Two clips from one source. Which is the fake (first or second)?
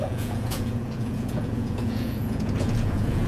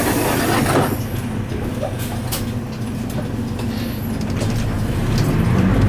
first